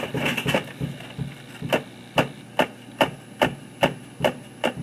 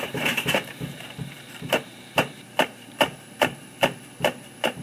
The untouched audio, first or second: first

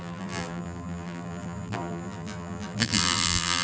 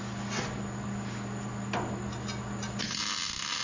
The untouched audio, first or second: second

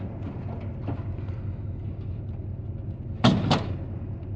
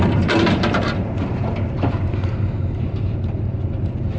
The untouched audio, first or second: first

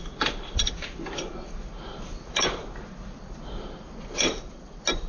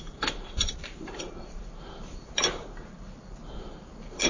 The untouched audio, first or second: first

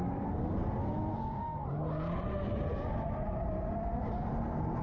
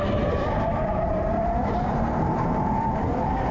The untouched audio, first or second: first